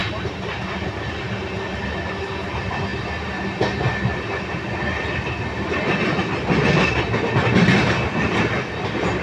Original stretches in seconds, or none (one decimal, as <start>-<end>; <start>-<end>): 0.0-9.2